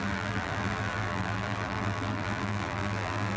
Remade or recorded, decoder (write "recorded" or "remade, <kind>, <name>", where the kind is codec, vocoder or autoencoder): remade, vocoder, BigVGAN v2